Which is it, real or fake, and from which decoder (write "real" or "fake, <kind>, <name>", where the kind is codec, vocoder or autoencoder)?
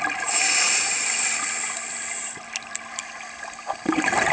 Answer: real